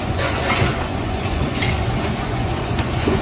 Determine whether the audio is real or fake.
fake